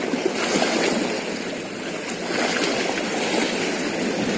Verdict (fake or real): real